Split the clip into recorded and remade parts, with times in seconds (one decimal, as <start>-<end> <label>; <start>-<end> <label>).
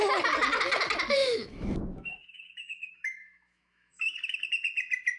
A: 0.0-1.2 recorded; 1.2-4.0 remade; 4.0-5.2 recorded